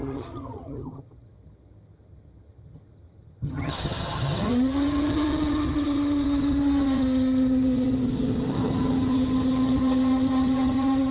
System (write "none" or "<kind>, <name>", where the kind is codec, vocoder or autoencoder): vocoder, HiFi-GAN